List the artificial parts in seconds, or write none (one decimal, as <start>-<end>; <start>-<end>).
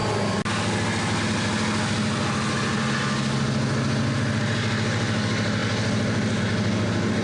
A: none